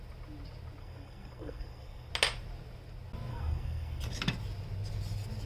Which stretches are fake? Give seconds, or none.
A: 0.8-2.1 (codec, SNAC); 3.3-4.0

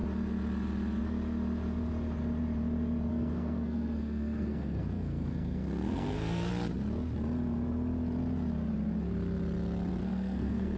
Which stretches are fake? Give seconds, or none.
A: 3.1-6.5 (codec, SNAC); 10.0-10.8

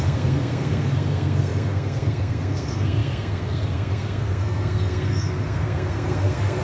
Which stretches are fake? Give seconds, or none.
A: 0.0-6.6 (codec, SNAC)

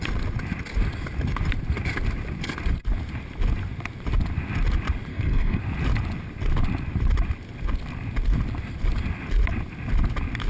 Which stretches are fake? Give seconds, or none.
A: 5.1-5.6 (codec, SNAC)